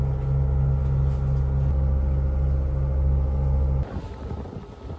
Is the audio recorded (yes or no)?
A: yes